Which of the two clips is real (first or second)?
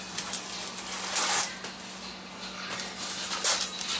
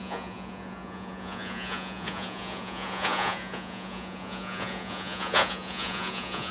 first